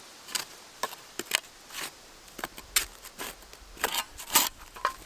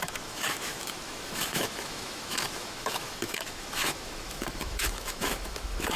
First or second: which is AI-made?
second